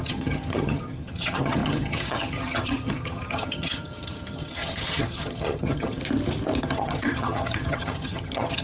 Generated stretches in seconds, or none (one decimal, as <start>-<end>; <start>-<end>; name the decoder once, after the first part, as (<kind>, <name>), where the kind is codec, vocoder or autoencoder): 0.0-6.0 (vocoder, HiFi-GAN); 6.6-8.6